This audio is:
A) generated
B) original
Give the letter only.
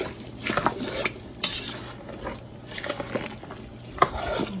B